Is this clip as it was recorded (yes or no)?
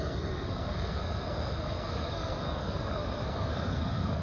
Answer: no